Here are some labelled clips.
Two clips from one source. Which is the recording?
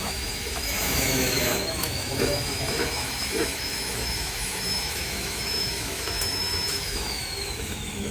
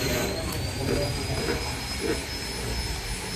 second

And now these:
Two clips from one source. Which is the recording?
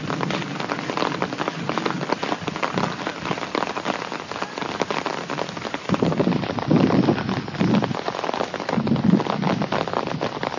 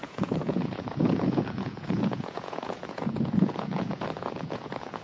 first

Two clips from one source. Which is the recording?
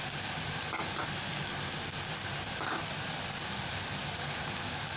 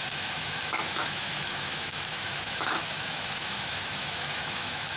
first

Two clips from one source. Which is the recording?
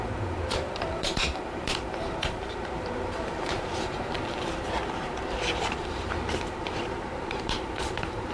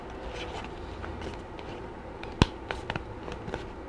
second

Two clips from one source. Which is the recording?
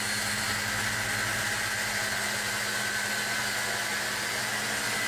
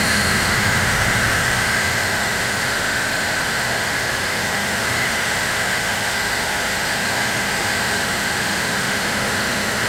first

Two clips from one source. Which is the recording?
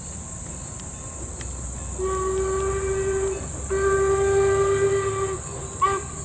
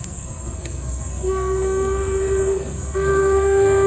first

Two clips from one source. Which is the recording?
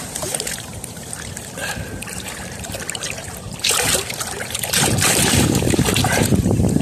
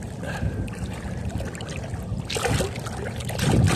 second